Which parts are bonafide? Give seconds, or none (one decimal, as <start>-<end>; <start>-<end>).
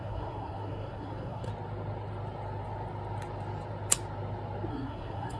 1.5-4.7